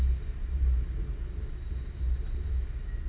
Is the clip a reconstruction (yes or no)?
no